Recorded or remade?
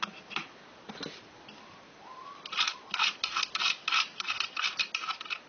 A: recorded